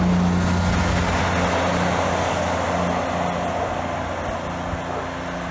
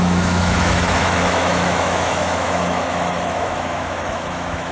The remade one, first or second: second